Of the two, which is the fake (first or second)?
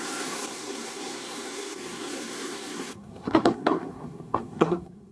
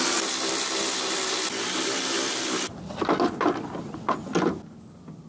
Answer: first